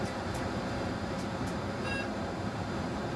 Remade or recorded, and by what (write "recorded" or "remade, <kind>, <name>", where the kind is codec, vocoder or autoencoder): remade, vocoder, BigVGAN v2